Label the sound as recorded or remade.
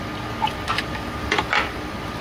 recorded